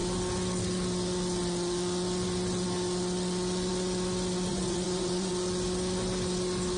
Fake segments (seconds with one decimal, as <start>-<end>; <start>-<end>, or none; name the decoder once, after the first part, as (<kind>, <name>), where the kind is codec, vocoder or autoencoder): 4.5-5.3 (vocoder, Vocos)

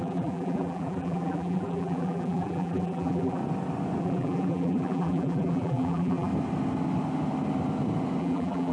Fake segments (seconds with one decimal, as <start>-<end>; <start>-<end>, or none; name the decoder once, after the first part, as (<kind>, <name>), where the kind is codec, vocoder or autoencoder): 0.0-3.4 (vocoder, BigVGAN v2); 4.0-6.3; 8.2-8.7

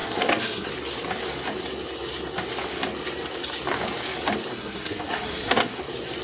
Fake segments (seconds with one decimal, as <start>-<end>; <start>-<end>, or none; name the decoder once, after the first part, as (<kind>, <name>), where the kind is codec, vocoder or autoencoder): 0.0-0.7 (codec, SNAC); 4.5-5.8

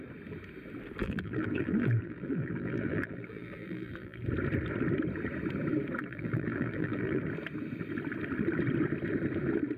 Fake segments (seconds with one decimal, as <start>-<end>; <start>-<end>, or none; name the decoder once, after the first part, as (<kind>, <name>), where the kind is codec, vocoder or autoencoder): 1.0-4.2 (vocoder, BigVGAN v2); 6.0-7.2

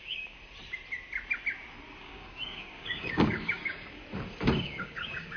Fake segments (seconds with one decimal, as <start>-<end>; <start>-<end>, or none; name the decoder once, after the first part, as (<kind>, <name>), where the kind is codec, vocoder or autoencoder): 0.0-0.4 (codec, DAC); 2.0-4.0; 4.6-5.4

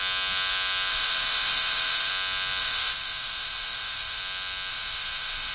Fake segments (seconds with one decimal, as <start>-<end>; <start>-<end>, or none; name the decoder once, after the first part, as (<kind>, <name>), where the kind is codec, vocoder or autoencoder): 0.9-2.1 (vocoder, WaveNeXt); 2.6-4.2; 4.7-5.5

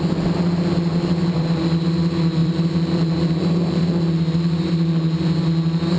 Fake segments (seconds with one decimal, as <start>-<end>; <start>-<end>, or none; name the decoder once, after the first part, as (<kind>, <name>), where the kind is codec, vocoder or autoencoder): 0.9-1.6 (vocoder, BigVGAN v2); 2.4-4.7

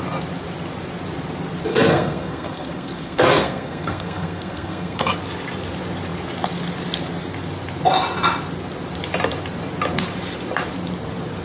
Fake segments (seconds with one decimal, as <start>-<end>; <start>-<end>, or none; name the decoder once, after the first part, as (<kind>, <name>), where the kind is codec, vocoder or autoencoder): 1.7-5.2 (codec, SNAC)